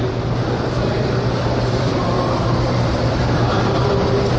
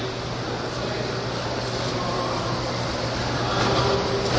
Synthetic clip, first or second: first